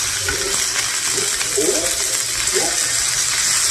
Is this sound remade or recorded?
recorded